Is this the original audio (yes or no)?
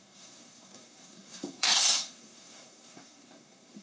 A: no